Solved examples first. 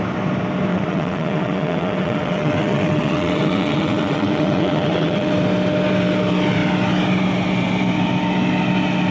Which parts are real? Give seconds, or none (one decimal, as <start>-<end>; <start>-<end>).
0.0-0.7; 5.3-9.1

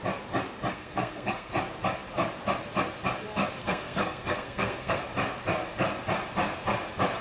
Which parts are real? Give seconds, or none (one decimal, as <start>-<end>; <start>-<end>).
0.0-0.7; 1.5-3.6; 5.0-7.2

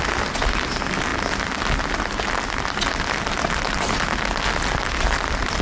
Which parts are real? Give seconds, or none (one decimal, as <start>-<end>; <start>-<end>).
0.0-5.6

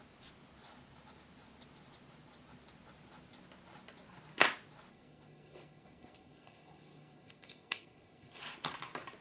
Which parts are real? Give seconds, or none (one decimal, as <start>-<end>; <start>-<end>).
0.0-4.9; 8.4-9.2

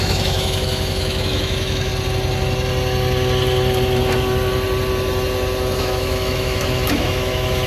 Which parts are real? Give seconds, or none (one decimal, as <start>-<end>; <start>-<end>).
1.9-5.8

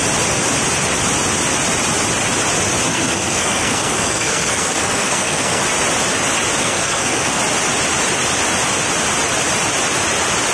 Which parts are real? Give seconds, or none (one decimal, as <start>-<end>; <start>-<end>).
0.0-2.9; 5.6-6.6; 7.4-10.5